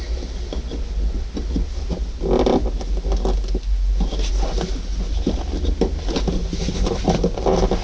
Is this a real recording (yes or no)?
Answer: yes